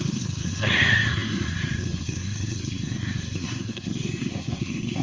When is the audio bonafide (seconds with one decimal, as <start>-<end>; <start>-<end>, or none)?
none